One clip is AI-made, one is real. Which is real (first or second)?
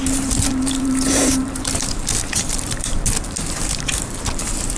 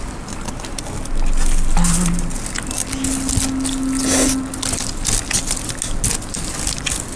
second